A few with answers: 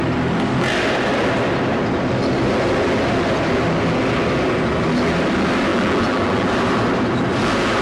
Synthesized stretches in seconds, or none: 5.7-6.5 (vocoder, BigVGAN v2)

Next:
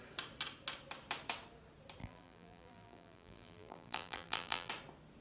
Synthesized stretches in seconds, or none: 2.0-4.7 (vocoder, BigVGAN v2)

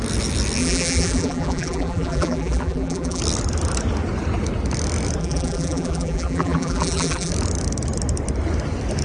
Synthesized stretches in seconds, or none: 0.6-3.2 (vocoder, BigVGAN v2); 5.2-7.3

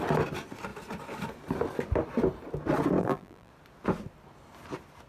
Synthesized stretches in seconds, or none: 3.0-3.5 (vocoder, BigVGAN v2)